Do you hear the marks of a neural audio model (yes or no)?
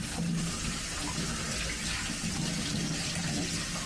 no